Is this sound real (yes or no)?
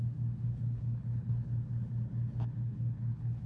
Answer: no